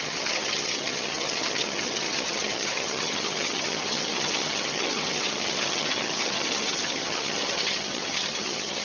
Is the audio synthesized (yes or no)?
yes